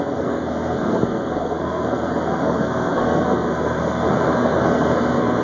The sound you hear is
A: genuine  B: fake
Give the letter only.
B